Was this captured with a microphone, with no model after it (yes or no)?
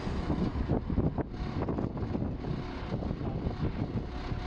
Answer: yes